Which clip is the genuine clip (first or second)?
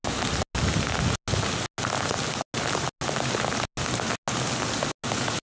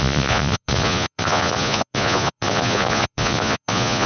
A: first